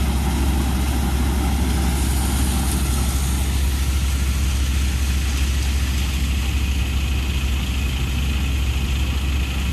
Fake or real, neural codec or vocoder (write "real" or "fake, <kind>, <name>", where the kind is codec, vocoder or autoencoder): real